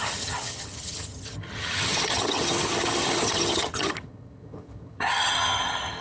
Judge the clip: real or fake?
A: fake